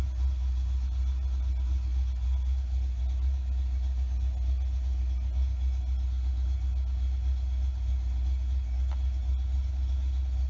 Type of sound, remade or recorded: recorded